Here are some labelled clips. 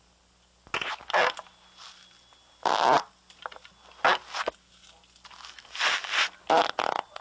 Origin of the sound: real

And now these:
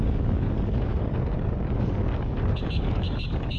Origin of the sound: fake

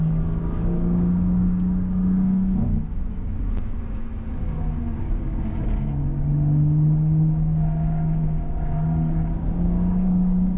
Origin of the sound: fake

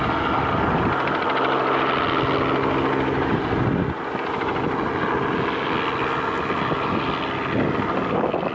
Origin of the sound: real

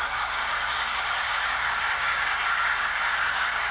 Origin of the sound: fake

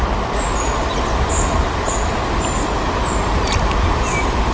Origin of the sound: real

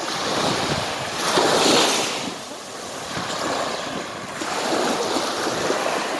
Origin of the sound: real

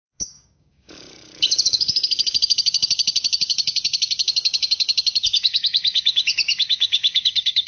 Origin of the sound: fake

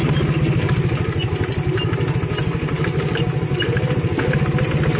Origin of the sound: real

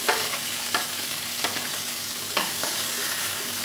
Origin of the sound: fake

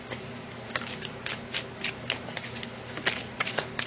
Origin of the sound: real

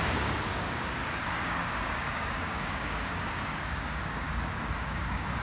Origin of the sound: fake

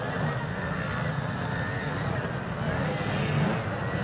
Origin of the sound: real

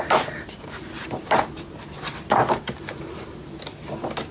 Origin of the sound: real